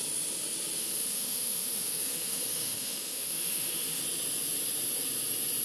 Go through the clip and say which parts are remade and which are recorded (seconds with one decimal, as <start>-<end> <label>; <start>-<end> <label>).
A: 0.0-0.8 recorded; 0.8-4.0 remade; 4.0-5.6 recorded